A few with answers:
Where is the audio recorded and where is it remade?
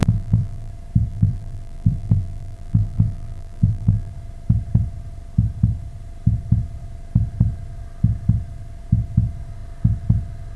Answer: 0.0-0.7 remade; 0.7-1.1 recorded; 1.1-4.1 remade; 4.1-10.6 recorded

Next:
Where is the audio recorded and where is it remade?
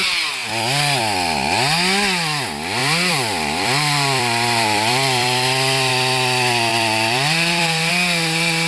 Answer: 0.0-2.8 recorded; 2.8-5.9 remade; 5.9-6.7 recorded; 6.7-7.9 remade; 7.9-8.7 recorded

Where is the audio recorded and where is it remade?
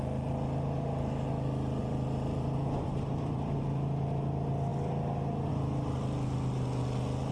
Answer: 0.0-1.8 recorded; 1.8-3.6 remade; 3.6-7.3 recorded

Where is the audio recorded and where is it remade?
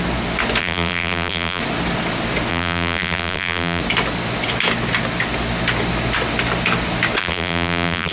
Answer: 0.0-0.6 recorded; 0.6-1.6 remade; 1.6-2.5 recorded; 2.5-3.8 remade; 3.8-7.2 recorded; 7.2-8.1 remade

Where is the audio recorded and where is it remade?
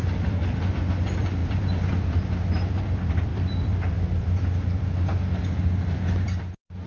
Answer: 0.0-5.2 remade; 5.2-5.8 recorded; 5.8-6.9 remade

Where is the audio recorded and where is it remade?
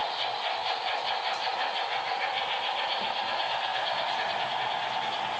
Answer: 0.0-3.2 remade; 3.2-3.7 recorded; 3.7-4.5 remade; 4.5-5.4 recorded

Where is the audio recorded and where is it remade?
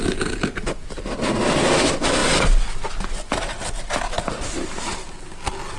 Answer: 0.0-5.8 recorded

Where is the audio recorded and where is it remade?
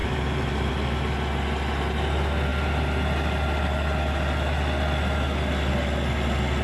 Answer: 0.0-0.7 remade; 0.7-6.6 recorded